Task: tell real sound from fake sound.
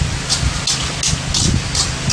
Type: real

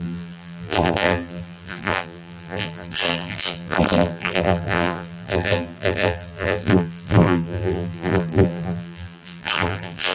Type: fake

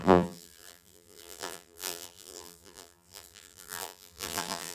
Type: fake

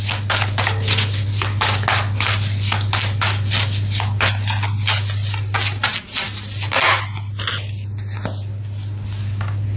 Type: real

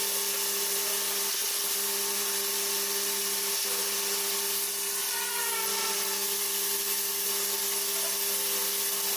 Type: real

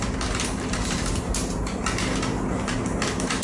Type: fake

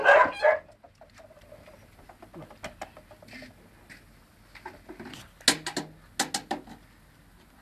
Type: real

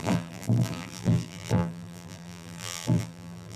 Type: fake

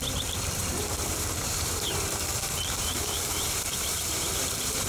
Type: fake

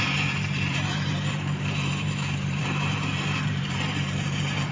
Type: fake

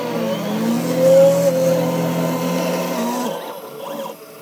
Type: real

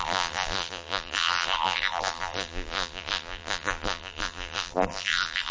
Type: fake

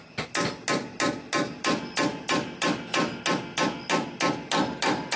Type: real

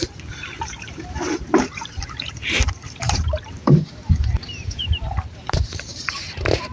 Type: fake